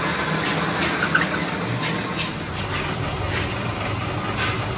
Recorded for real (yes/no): yes